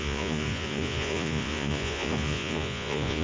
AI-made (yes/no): yes